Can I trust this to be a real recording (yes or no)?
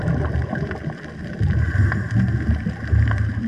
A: yes